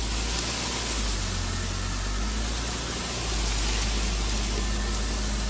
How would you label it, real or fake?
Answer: real